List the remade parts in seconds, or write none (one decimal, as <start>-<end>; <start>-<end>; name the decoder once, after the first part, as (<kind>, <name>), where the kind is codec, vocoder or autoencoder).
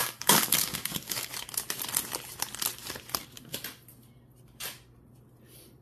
0.0-1.3 (codec, DAC)